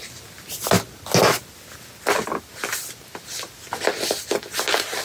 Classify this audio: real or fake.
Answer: real